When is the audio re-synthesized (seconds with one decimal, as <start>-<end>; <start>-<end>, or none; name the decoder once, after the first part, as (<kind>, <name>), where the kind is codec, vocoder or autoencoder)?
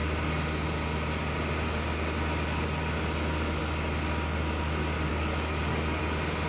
5.1-6.0 (codec, DAC)